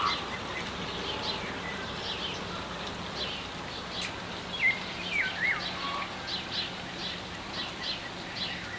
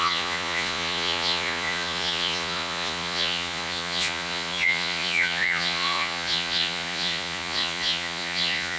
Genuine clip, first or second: first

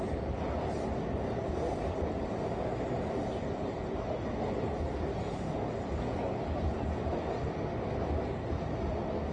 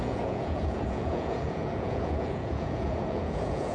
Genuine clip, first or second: first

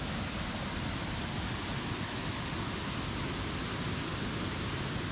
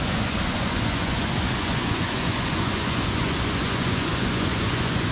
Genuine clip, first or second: first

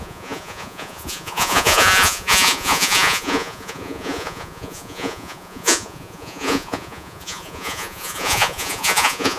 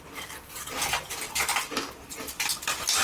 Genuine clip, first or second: second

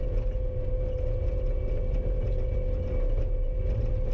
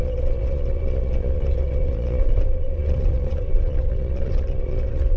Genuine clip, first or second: first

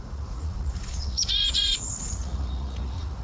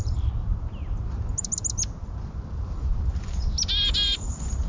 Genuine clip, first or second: second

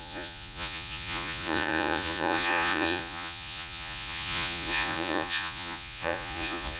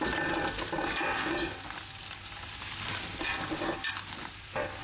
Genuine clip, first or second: second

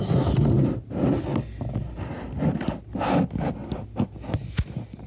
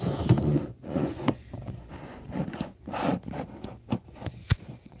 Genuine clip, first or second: first